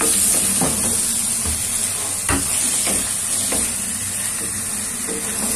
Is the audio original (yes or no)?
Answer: yes